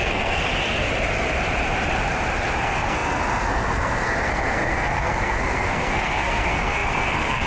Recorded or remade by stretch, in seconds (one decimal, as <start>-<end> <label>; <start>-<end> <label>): 0.0-0.5 remade; 0.5-2.6 recorded; 2.6-7.5 remade